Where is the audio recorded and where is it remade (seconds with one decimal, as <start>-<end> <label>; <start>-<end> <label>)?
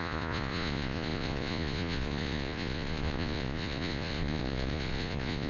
0.0-5.5 remade